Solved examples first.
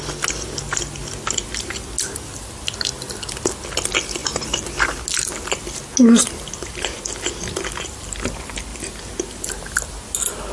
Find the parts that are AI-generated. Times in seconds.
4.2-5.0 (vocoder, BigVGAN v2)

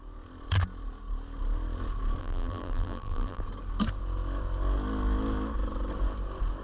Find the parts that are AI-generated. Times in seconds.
2.2-3.4 (vocoder, BigVGAN v2)

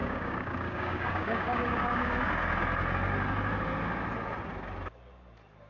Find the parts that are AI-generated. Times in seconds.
0.0-2.3 (codec, DAC)

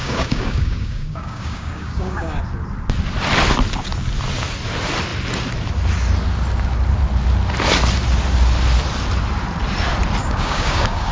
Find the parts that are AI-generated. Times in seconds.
0.0-2.4 (codec, DAC); 10.2-11.1